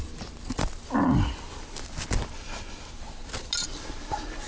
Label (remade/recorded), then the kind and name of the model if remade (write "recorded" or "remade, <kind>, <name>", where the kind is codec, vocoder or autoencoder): recorded